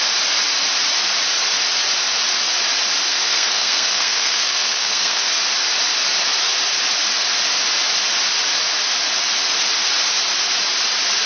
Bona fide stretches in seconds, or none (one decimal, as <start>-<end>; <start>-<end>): 0.0-3.1; 5.3-11.3